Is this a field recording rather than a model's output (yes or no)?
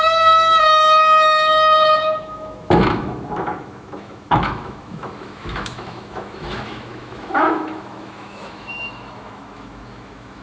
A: no